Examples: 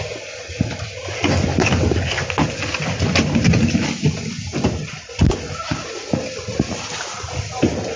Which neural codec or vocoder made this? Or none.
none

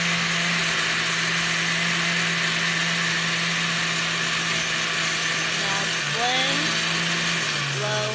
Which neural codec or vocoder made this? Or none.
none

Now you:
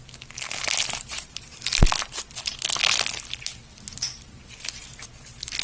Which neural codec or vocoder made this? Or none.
none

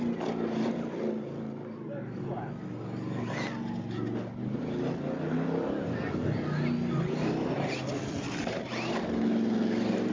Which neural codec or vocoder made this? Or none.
none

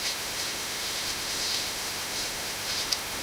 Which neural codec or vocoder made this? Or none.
autoencoder, DAC-VAE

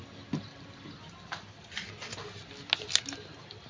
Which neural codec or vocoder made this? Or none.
none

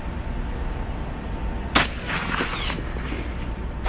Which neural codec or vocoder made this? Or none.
none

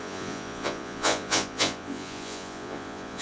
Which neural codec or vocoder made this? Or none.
vocoder, Vocos